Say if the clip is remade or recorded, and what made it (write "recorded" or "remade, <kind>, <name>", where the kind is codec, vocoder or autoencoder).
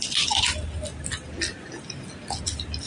recorded